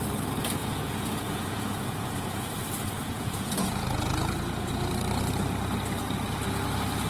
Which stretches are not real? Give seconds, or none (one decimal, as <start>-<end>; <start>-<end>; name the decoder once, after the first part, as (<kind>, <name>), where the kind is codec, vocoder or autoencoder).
0.6-4.9 (vocoder, Vocos)